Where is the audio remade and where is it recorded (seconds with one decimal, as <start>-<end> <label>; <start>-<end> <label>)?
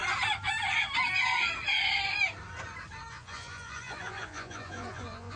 0.0-3.1 recorded; 3.1-5.4 remade